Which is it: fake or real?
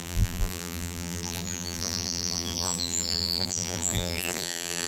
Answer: fake